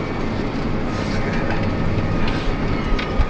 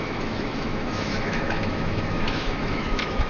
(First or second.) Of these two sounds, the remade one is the second